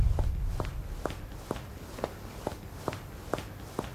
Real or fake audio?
real